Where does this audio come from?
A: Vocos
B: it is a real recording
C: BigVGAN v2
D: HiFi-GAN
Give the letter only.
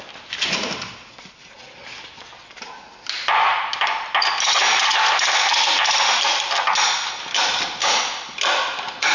B